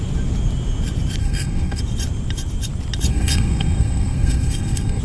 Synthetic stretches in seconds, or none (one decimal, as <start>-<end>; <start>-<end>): 1.2-1.8; 3.1-5.0